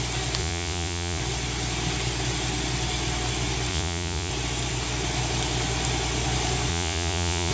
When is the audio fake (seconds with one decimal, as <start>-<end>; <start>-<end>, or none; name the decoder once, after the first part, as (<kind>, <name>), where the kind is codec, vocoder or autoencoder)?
0.4-1.2 (vocoder, Vocos); 3.7-4.3; 6.7-7.5